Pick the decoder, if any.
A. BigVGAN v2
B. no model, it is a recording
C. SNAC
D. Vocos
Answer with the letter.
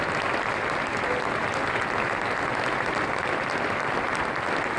B